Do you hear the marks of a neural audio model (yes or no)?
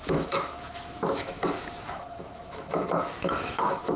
yes